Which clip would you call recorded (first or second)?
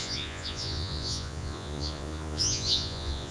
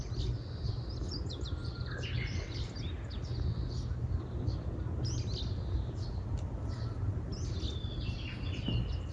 second